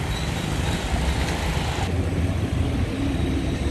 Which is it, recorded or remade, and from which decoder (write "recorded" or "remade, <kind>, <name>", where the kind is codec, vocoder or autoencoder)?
recorded